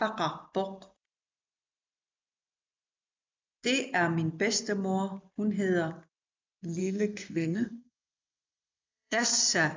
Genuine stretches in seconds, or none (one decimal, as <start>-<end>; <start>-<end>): 0.0-6.8; 9.4-9.8